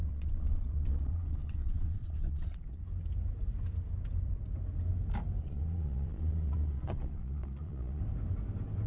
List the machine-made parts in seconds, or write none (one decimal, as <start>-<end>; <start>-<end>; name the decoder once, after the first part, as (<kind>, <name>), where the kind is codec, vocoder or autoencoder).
0.0-2.8 (vocoder, Vocos); 5.4-8.0